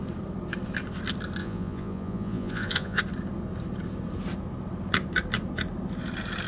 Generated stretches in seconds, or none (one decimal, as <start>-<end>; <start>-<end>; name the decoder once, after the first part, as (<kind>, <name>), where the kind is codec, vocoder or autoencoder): 1.4-3.0 (vocoder, Vocos)